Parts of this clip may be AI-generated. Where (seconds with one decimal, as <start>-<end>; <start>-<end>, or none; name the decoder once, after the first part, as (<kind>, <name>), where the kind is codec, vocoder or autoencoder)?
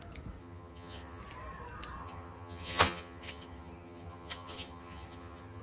0.4-1.2 (vocoder, HiFi-GAN); 2.0-5.6